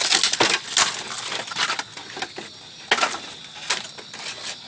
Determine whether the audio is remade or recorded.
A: recorded